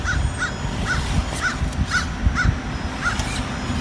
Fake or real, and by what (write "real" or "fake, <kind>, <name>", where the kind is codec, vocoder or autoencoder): real